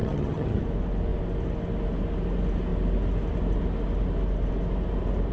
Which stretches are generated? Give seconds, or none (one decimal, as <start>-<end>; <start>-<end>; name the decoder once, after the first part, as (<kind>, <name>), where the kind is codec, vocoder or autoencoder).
0.0-0.6 (vocoder, HiFi-GAN)

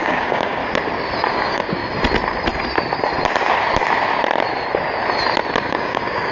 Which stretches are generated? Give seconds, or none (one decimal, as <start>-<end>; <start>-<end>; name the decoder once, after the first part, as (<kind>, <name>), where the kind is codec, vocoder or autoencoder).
0.0-0.6 (codec, DAC); 1.3-1.8; 5.6-6.3

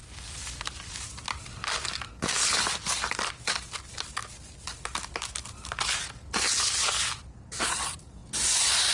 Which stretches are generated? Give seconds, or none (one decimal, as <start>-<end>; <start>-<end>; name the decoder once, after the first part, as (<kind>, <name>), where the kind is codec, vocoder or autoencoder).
none

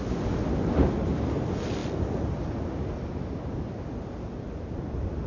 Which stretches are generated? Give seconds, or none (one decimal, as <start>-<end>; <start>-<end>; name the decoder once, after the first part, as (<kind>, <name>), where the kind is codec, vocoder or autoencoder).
none